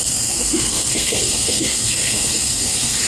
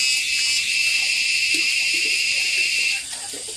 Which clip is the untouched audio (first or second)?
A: second